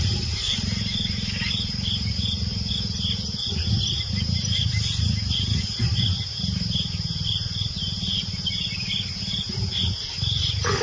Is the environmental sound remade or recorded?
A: recorded